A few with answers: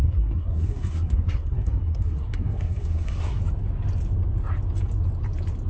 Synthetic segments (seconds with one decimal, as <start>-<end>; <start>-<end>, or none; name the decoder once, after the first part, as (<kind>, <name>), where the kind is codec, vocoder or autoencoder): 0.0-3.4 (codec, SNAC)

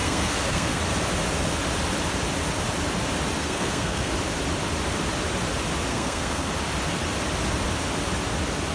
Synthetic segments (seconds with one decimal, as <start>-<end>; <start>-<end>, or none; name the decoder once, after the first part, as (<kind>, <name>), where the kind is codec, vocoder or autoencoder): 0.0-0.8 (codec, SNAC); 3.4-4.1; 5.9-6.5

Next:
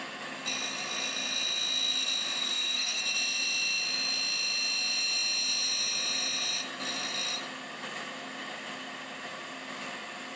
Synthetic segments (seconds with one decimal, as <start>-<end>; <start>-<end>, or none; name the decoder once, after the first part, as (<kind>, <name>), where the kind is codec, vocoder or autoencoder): 2.4-3.0 (codec, SNAC)

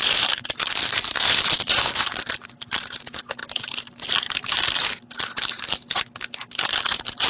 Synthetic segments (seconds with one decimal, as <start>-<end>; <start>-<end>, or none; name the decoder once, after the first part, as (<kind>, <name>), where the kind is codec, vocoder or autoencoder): none

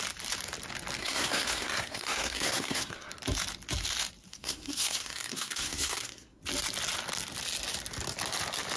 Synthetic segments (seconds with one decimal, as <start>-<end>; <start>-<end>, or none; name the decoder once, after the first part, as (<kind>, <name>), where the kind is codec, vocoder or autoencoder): 1.0-3.1 (codec, SNAC); 4.3-6.4

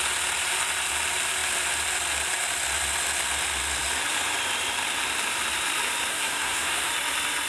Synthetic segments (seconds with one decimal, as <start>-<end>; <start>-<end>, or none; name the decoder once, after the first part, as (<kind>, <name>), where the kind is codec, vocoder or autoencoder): 6.1-6.9 (codec, SNAC)